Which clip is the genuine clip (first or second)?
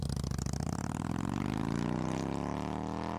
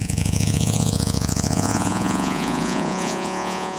first